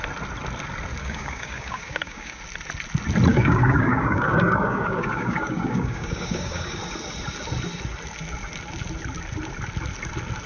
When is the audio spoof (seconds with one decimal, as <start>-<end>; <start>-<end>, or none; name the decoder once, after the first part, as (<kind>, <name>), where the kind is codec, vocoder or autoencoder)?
1.0-2.4 (codec, DAC); 3.3-6.8